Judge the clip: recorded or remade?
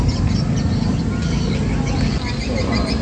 recorded